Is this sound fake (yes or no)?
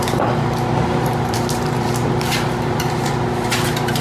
yes